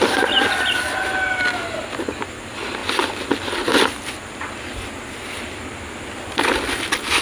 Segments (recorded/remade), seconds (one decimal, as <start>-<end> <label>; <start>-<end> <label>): 0.0-7.2 recorded